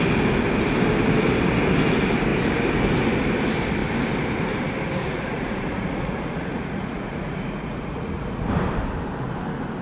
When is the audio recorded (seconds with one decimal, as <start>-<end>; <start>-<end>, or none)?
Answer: 0.0-5.0; 8.5-9.8